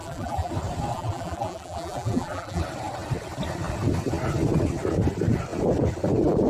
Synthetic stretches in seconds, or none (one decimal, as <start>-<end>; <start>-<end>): 0.0-0.5; 0.9-2.6